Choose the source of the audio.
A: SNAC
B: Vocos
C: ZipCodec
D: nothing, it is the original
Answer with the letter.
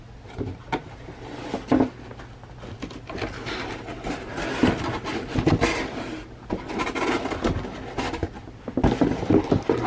D